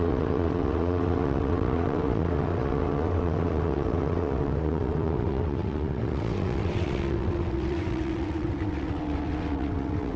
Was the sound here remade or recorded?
remade